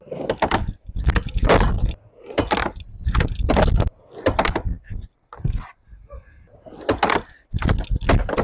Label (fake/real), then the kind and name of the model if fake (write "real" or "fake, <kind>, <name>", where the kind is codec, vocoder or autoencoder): real